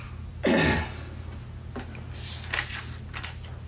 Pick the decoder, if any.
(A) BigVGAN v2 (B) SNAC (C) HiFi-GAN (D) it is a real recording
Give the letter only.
D